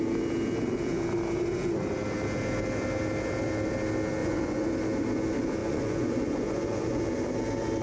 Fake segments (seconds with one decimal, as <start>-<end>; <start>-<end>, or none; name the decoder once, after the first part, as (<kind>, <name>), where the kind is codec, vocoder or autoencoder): 4.2-4.7 (vocoder, Vocos); 5.6-7.0